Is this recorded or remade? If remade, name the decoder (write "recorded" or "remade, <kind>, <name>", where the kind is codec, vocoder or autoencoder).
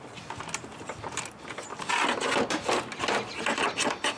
recorded